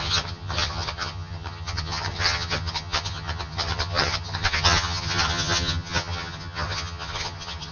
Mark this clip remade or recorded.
remade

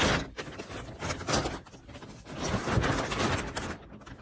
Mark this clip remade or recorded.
recorded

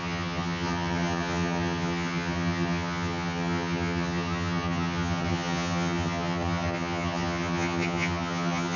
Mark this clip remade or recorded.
remade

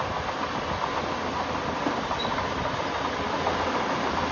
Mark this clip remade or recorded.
recorded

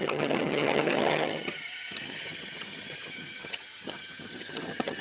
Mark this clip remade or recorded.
remade